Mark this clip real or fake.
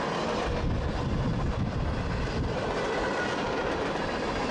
real